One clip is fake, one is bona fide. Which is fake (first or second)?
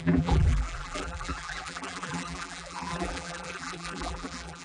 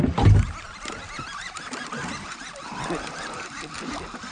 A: first